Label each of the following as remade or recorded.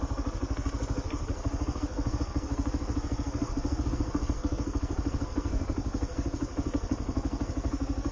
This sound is remade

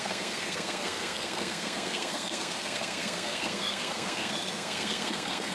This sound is remade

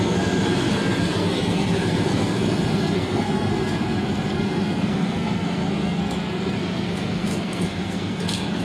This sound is remade